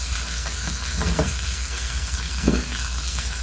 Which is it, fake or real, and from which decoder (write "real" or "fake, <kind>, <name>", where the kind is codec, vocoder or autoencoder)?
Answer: fake, codec, SNAC